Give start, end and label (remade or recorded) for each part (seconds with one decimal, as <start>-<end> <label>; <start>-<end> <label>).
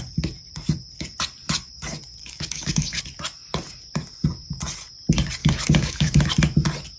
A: 0.0-2.2 recorded; 2.2-3.0 remade; 3.0-5.4 recorded; 5.4-6.2 remade; 6.2-7.0 recorded